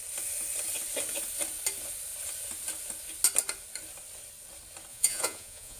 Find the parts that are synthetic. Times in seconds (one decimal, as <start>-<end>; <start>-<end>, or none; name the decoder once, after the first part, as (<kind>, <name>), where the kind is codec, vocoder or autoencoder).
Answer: 4.9-5.8 (vocoder, Vocos)